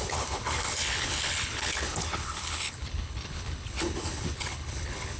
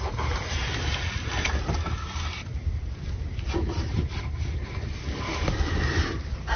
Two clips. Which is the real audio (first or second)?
second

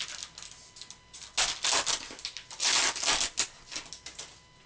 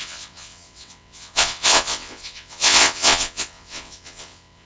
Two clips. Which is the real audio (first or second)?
first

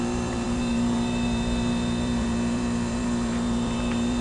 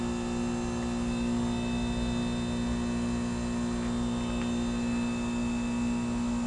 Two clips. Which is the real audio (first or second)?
second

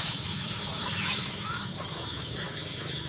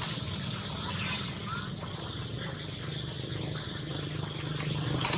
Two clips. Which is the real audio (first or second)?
second